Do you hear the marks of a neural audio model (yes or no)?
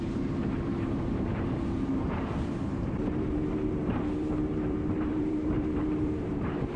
yes